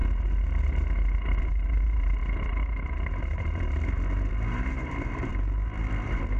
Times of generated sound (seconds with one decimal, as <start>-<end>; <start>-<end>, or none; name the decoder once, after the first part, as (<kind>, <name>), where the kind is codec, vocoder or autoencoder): 1.4-6.4 (vocoder, BigVGAN v2)